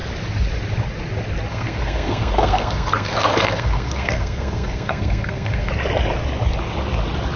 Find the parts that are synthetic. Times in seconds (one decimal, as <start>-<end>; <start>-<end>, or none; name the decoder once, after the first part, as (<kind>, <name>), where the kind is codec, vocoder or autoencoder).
1.5-5.7 (codec, SNAC)